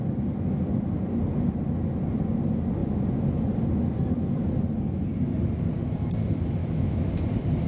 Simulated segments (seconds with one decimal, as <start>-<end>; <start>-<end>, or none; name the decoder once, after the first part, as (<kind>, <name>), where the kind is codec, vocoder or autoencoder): 6.6-7.1 (autoencoder, DAC-VAE)